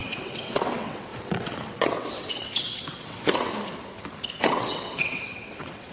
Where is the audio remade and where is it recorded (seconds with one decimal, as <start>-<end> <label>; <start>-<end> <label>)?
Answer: 0.0-3.5 remade; 3.5-4.4 recorded; 4.4-5.9 remade